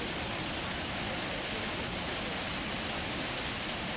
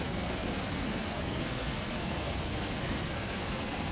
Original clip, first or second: first